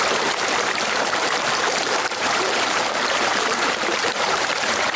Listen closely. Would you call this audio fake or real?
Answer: fake